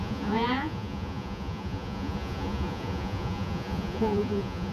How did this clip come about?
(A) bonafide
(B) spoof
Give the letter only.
B